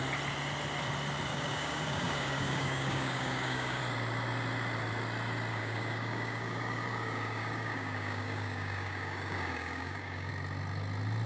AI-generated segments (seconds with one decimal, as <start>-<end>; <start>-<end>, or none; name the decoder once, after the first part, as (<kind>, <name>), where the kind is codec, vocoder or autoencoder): 1.3-3.8 (codec, DAC); 5.5-10.3